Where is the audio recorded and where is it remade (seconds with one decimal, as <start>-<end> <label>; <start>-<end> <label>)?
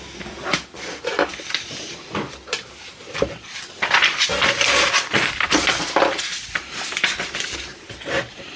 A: 0.0-7.7 recorded; 7.7-8.6 remade